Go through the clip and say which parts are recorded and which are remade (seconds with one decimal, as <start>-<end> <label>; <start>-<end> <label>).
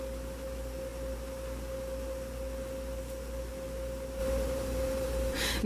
0.0-4.2 recorded; 4.2-5.7 remade